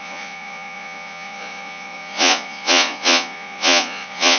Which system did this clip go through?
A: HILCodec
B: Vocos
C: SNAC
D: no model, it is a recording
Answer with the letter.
B